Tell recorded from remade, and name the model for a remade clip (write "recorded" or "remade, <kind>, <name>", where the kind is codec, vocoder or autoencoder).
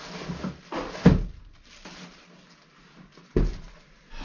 recorded